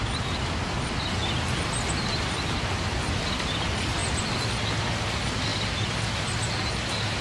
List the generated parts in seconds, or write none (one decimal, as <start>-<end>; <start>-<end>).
none